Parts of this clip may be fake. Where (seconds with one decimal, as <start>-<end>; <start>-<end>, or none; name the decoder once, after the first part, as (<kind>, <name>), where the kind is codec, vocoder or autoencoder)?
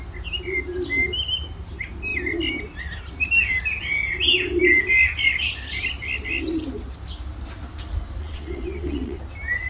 8.2-9.2 (vocoder, WaveNeXt)